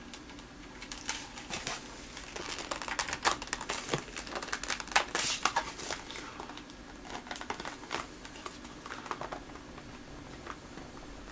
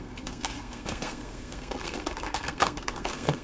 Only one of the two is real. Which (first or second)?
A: first